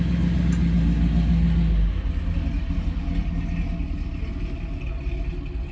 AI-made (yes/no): no